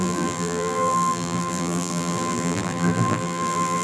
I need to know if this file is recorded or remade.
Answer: remade